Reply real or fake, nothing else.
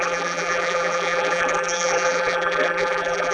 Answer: fake